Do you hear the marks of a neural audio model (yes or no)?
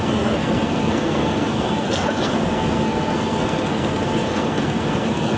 yes